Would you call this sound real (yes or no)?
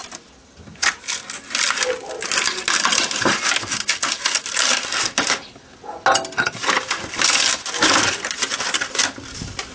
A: yes